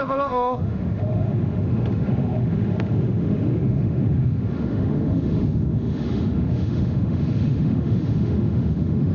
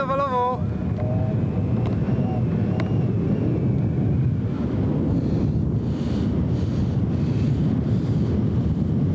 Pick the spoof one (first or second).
first